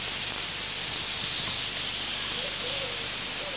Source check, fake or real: real